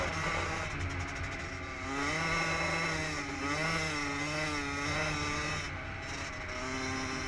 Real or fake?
real